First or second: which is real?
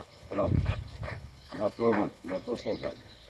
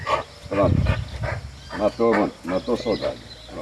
second